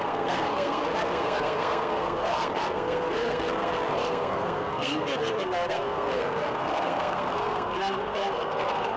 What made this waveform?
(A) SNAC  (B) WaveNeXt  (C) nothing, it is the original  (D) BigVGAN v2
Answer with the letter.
A